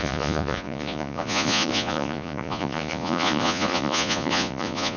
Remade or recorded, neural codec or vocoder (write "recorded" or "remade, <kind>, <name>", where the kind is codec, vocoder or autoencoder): remade, vocoder, Vocos